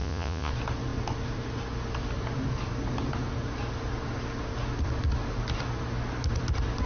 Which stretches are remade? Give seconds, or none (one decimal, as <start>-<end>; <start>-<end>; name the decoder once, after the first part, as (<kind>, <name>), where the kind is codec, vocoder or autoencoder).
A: 0.0-0.5 (vocoder, Vocos)